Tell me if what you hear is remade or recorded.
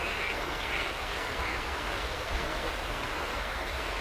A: remade